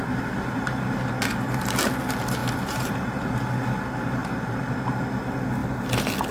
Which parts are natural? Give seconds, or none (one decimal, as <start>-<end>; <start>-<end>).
0.0-2.4; 3.0-4.2; 4.9-6.3